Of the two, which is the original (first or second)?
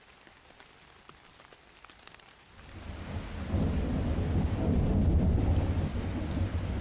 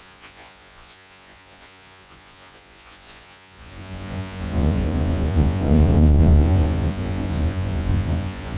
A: first